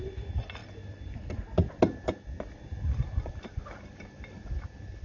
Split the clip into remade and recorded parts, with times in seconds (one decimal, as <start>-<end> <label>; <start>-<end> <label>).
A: 0.0-5.0 recorded